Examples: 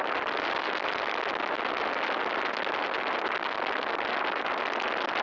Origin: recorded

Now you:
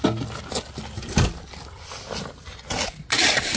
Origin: recorded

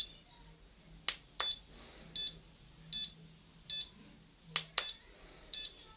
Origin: recorded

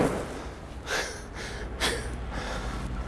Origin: recorded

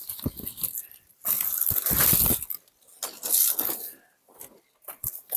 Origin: recorded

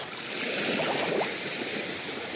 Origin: remade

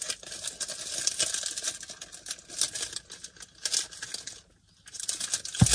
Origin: recorded